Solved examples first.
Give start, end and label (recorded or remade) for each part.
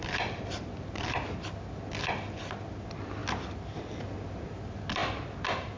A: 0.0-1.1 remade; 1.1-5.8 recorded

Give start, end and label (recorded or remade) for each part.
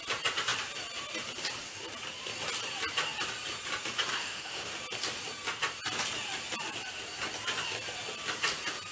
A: 0.0-4.1 recorded; 4.1-4.7 remade; 4.7-8.9 recorded